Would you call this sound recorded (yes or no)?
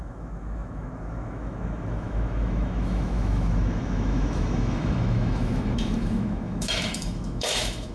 no